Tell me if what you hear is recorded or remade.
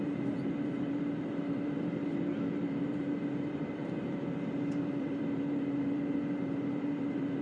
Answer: remade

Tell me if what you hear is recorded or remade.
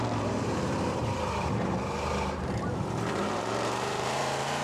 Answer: remade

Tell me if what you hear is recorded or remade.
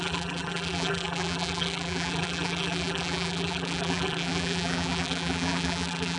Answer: remade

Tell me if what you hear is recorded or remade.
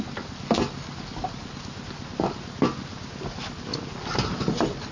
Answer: recorded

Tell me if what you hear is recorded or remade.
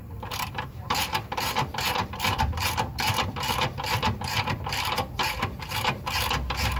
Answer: remade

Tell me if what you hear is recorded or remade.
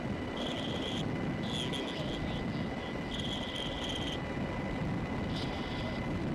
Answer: recorded